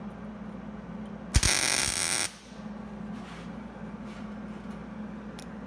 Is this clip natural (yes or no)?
yes